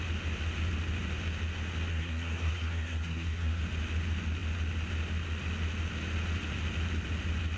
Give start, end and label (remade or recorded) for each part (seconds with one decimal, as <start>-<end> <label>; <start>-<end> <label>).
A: 0.0-1.9 recorded; 1.9-3.6 remade; 3.6-7.6 recorded